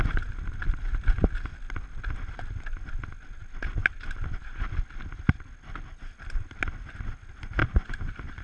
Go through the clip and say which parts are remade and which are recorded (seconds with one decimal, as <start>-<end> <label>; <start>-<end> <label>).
0.0-7.6 recorded; 7.6-8.4 remade